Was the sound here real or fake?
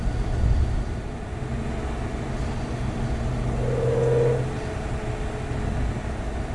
real